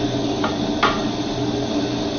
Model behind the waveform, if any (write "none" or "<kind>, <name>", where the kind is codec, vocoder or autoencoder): none